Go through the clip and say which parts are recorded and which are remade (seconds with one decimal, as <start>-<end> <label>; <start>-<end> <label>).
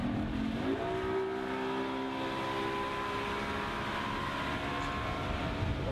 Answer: 0.0-5.9 recorded